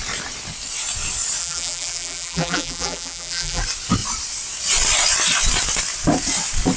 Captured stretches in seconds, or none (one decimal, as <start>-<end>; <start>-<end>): 0.0-1.4; 3.6-6.8